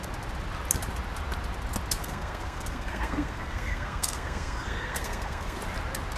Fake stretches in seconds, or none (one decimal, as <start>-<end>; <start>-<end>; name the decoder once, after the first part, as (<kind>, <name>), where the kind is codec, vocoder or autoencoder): 2.0-5.6 (codec, SNAC)